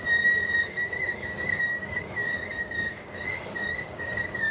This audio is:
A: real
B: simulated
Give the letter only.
B